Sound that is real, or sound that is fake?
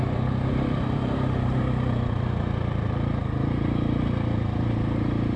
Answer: fake